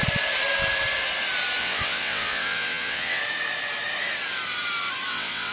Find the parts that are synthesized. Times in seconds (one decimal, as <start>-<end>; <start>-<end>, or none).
1.6-3.2; 5.1-5.5